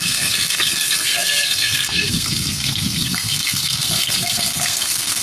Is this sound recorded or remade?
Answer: remade